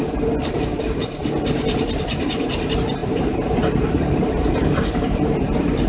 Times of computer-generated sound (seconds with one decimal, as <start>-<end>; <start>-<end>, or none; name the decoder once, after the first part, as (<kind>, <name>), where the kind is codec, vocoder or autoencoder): 3.0-5.4 (vocoder, BigVGAN v2)

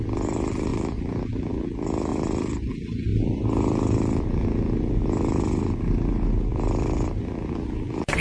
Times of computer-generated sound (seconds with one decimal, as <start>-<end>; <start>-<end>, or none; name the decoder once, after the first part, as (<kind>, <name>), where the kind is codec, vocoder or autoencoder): 0.7-1.5 (vocoder, BigVGAN v2); 2.1-2.7; 3.1-8.2

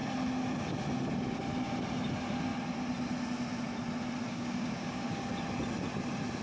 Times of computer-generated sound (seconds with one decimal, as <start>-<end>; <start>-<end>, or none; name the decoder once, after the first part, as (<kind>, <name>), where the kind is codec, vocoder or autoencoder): 4.3-5.3 (codec, DAC)

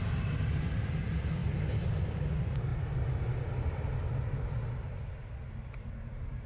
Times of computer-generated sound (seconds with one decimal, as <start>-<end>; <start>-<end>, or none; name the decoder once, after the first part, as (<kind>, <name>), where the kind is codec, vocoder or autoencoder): none

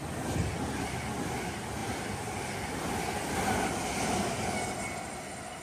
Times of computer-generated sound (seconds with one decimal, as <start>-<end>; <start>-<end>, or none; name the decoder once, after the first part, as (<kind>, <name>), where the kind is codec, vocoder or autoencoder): none

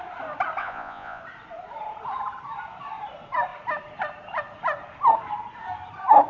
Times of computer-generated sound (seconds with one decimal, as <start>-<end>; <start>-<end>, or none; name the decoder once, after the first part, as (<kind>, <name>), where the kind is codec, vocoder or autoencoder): 0.6-1.2 (vocoder, Vocos)